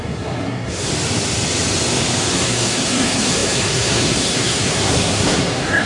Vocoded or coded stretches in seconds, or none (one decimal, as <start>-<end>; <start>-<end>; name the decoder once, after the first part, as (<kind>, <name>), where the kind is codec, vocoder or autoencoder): 0.0-0.9 (codec, SNAC); 2.3-5.9